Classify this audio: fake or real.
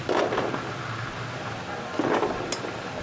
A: real